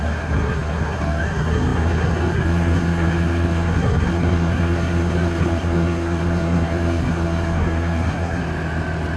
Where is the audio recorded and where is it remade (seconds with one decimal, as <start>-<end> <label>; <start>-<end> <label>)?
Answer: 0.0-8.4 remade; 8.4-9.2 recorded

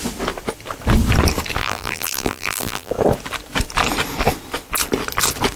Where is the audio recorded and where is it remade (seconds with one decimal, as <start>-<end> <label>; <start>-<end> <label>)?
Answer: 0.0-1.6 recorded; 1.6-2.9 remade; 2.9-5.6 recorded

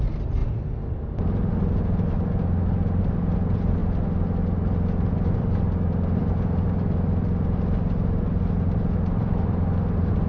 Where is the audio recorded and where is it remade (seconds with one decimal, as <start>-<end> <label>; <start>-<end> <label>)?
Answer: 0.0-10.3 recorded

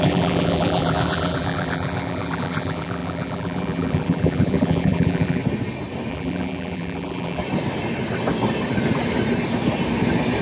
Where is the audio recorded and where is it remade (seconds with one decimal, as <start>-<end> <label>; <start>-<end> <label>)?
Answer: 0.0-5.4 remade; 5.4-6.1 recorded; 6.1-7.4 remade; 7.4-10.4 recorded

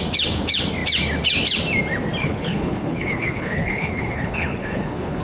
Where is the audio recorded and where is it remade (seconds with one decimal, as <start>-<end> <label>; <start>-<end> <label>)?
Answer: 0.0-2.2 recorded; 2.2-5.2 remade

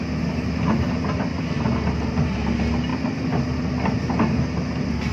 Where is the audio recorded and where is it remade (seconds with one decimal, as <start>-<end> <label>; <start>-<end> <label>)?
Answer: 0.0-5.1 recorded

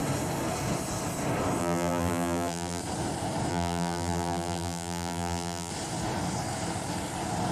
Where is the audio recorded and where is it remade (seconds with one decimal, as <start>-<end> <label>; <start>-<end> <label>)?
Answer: 0.0-1.6 recorded; 1.6-2.8 remade; 2.8-3.5 recorded; 3.5-5.7 remade; 5.7-7.5 recorded